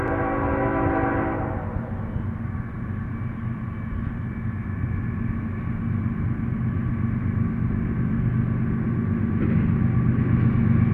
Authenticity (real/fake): real